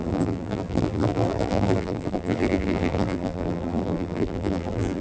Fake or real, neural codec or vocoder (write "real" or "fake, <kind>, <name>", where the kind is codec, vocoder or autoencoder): fake, vocoder, BigVGAN v2